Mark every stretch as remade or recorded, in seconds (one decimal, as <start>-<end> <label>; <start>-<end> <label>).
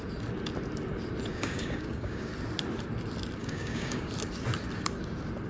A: 0.0-1.3 recorded; 1.3-2.3 remade; 2.3-3.4 recorded; 3.4-4.1 remade; 4.1-5.5 recorded